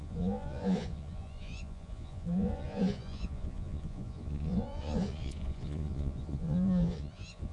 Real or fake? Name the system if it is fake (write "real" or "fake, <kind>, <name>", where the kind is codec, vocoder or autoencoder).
fake, vocoder, Vocos